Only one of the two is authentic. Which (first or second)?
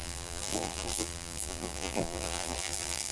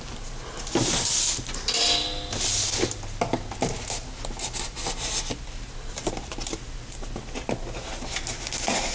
second